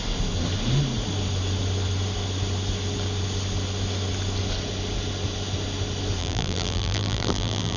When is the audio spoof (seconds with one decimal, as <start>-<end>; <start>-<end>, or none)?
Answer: 6.2-7.8